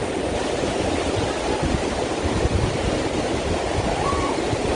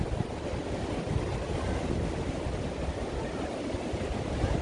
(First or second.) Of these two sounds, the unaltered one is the second